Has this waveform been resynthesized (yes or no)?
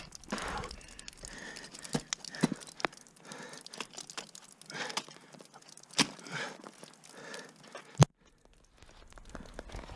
no